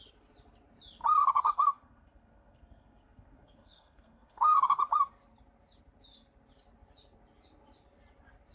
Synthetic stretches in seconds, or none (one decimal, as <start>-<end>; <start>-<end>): 1.2-4.8